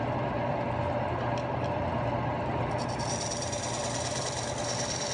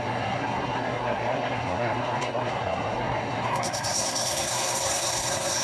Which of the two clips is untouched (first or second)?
first